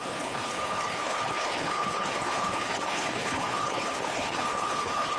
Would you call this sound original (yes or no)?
no